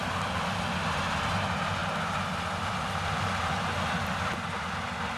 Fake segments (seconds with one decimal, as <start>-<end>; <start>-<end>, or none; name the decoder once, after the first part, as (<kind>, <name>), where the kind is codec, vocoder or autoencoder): none